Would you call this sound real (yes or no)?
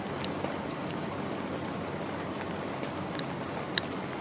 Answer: yes